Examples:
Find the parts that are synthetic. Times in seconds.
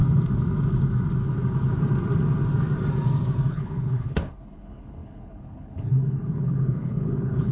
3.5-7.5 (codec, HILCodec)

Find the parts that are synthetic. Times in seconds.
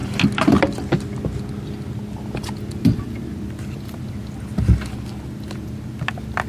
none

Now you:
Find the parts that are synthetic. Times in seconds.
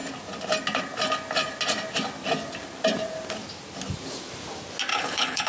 4.9-5.5 (codec, HILCodec)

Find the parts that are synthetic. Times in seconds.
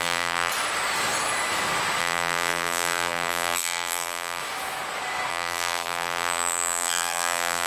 0.0-0.5 (vocoder, BigVGAN v2); 2.0-4.4; 5.3-7.7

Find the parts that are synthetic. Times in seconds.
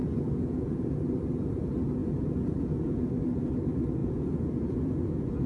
0.0-1.0 (vocoder, Vocos); 2.0-3.1; 4.0-5.5